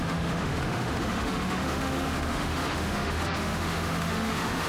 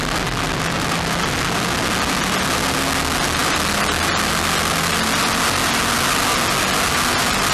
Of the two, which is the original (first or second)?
second